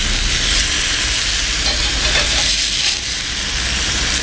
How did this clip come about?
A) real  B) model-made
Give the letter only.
A